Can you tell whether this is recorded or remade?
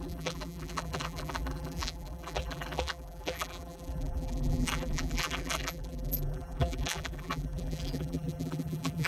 remade